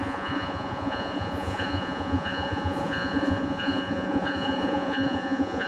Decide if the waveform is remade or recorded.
remade